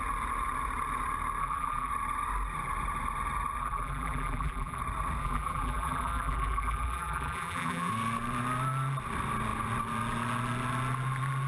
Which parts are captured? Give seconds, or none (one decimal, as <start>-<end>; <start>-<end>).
0.0-1.4; 1.9-3.6; 4.8-5.2; 7.9-11.5